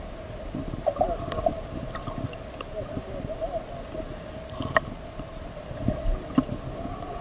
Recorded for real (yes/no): yes